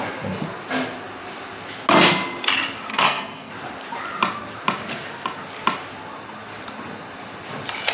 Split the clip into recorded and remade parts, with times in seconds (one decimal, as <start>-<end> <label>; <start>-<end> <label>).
0.0-2.9 recorded; 2.9-3.5 remade; 3.5-7.9 recorded